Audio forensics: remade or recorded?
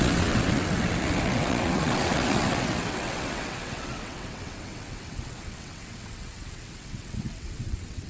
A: remade